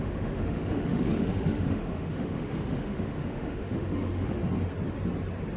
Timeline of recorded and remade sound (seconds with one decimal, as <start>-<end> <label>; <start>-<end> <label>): 0.0-4.4 remade; 4.4-5.6 recorded